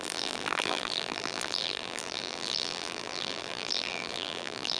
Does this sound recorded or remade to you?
remade